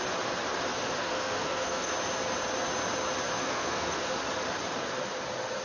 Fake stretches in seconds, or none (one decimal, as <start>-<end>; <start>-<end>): 1.0-1.9; 3.4-4.0